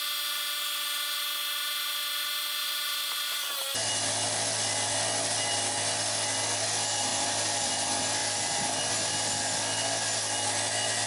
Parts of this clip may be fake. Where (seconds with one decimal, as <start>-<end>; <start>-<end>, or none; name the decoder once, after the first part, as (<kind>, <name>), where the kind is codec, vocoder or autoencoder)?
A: 2.6-3.6 (vocoder, BigVGAN v2); 7.1-7.7

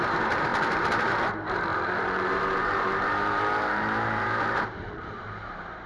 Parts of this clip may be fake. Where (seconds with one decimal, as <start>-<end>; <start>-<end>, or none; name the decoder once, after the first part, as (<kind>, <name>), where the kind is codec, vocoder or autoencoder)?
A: 0.0-5.9 (vocoder, BigVGAN v2)

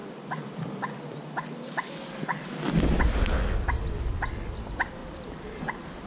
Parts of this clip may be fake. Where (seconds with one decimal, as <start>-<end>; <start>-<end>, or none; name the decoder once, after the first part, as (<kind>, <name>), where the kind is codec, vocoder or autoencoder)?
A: 0.0-1.7 (vocoder, BigVGAN v2); 5.0-6.1

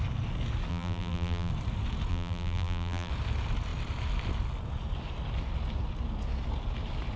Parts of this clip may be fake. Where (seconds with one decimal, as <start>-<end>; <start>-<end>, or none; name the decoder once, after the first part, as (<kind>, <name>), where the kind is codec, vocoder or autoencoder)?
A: 0.7-1.5 (vocoder, BigVGAN v2); 2.1-3.1

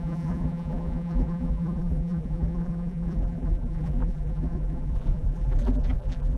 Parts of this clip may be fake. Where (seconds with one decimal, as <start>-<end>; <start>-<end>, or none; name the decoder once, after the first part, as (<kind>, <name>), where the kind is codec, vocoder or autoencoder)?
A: 0.0-6.4 (vocoder, BigVGAN v2)

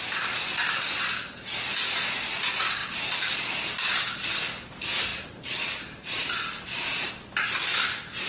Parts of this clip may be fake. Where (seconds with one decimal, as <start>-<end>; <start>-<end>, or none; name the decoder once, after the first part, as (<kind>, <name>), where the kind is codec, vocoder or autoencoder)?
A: 2.8-4.0 (vocoder, BigVGAN v2); 5.1-7.1

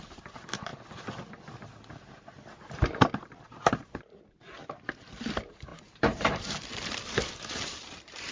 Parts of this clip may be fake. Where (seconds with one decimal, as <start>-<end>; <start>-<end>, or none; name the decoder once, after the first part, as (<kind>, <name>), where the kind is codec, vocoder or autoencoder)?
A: 0.0-0.7 (vocoder, BigVGAN v2); 3.5-8.3

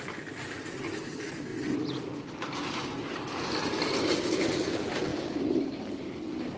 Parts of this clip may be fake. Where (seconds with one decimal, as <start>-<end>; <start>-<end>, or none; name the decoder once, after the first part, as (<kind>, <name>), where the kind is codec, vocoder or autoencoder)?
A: none